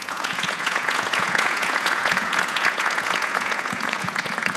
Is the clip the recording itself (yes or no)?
no